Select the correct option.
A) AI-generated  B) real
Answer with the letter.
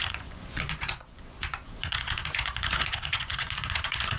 A